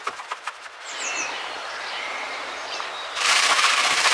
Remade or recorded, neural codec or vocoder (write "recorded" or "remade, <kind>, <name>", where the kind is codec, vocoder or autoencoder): remade, vocoder, BigVGAN v2